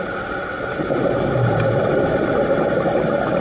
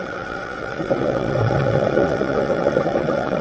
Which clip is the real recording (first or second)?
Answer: first